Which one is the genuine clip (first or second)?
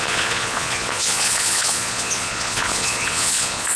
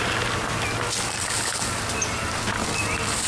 second